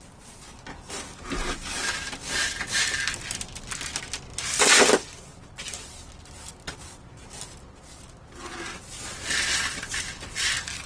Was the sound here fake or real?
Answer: real